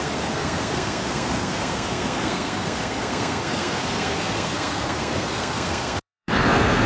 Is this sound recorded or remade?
remade